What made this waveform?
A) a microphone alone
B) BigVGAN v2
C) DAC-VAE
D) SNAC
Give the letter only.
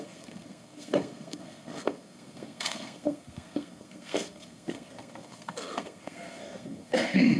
D